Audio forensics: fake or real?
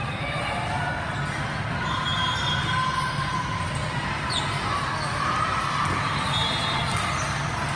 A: real